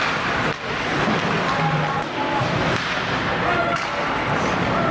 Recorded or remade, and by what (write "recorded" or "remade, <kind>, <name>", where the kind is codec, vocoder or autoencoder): recorded